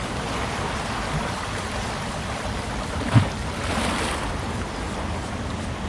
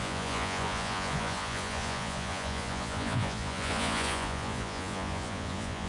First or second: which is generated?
second